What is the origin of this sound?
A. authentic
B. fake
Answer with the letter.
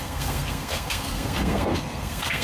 B